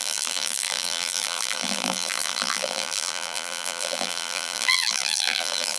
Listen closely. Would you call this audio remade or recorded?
remade